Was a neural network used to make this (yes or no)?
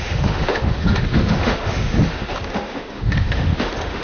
yes